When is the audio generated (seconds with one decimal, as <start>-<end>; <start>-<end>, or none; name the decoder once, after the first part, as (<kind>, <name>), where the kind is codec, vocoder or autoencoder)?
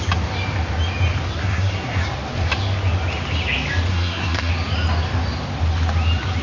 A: 1.4-2.0 (codec, SNAC); 3.9-4.5